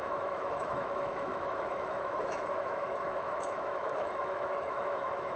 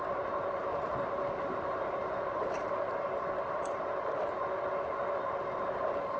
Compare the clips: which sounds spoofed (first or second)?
first